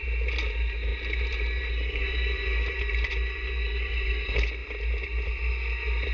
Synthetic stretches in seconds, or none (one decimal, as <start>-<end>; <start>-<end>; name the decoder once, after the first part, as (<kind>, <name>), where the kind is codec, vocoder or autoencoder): none